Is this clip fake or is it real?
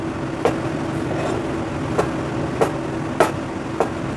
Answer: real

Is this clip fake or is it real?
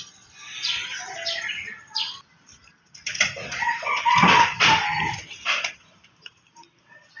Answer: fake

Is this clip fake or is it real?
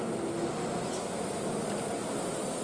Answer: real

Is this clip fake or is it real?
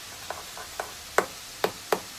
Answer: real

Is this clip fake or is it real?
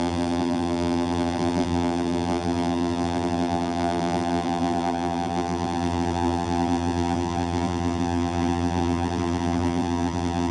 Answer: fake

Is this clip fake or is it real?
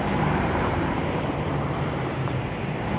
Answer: fake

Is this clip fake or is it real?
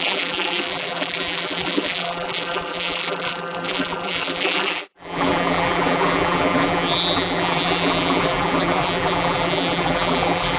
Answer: fake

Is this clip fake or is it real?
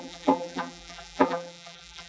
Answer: fake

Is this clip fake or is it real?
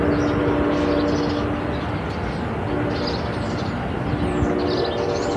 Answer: real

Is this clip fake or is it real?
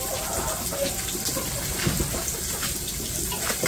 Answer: real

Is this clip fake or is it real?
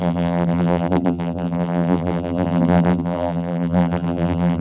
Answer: fake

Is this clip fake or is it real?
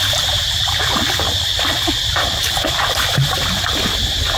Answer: real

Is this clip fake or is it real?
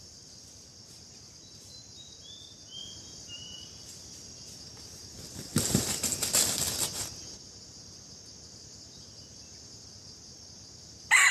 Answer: real